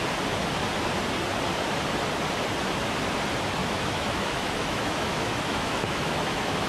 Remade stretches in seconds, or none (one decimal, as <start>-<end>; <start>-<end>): 3.6-6.7